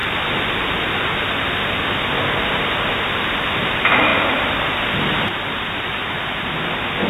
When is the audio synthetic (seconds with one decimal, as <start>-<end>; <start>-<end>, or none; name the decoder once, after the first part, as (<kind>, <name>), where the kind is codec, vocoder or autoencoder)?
none